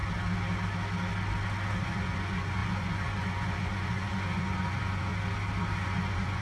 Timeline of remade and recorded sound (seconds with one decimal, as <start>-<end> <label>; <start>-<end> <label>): 0.0-1.8 recorded; 1.8-5.1 remade; 5.1-5.7 recorded; 5.7-6.4 remade